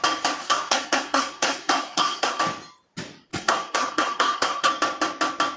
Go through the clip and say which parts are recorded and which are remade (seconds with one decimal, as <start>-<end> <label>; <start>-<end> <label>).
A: 0.0-0.4 recorded; 0.4-2.4 remade; 2.4-3.3 recorded; 3.3-4.7 remade; 4.7-5.6 recorded